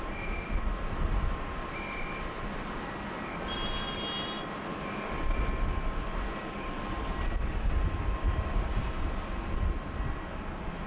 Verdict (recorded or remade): recorded